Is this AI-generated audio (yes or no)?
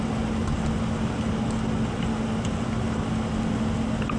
no